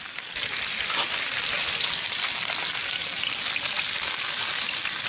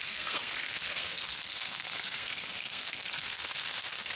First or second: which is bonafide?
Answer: first